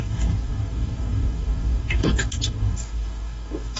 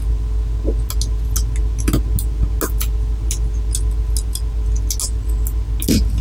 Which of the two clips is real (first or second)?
second